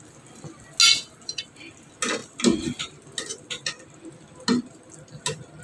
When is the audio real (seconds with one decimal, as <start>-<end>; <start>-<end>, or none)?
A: 0.0-5.6